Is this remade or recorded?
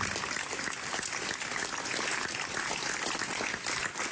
recorded